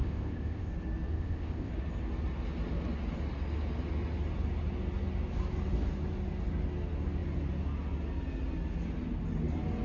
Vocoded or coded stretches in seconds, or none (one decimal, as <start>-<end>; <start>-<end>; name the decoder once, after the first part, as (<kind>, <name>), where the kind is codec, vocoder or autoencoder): 0.0-0.7 (codec, ZipCodec); 1.1-1.7